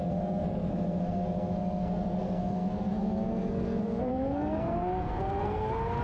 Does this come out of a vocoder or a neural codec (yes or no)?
yes